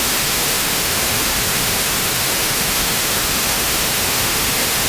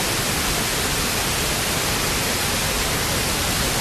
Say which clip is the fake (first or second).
first